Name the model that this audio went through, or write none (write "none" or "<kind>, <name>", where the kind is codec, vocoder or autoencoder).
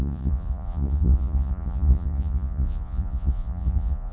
vocoder, Vocos